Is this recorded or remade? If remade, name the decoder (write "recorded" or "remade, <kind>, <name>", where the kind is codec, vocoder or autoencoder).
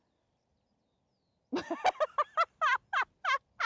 recorded